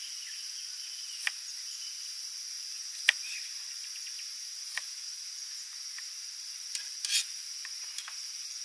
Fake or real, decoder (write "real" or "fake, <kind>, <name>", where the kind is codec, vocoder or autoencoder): real